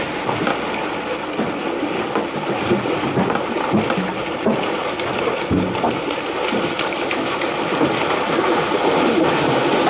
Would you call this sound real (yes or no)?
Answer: yes